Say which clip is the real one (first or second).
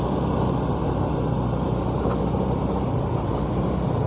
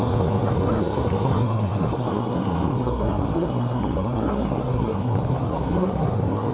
first